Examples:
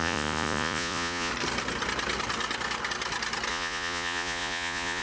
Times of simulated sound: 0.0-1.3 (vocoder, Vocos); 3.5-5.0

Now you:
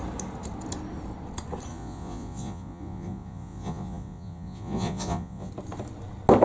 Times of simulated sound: 1.7-5.5 (vocoder, Vocos)

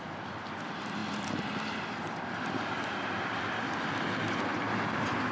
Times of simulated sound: none

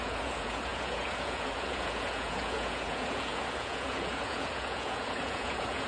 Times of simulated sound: 0.0-5.9 (vocoder, Vocos)

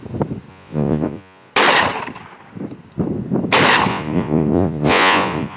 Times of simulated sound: 0.5-1.5 (vocoder, Vocos); 3.9-5.6